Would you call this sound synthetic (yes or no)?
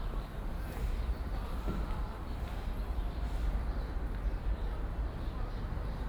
no